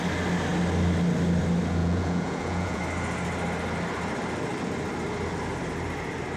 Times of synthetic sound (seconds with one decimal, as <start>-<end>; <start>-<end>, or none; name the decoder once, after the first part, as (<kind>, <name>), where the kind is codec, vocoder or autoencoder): 1.8-2.8 (vocoder, Vocos)